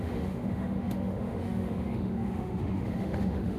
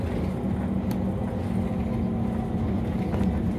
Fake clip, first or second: first